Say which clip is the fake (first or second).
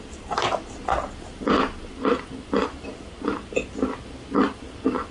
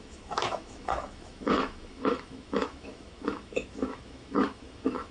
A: second